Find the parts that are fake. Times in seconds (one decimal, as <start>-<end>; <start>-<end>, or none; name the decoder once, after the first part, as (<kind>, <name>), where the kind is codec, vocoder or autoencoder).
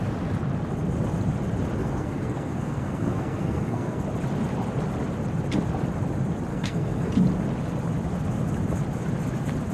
1.8-4.0 (codec, SNAC); 6.5-7.1